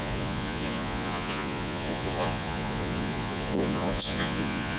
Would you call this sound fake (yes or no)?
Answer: yes